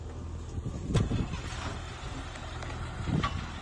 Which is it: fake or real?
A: real